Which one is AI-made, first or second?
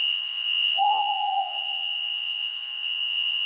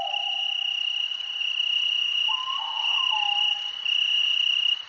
first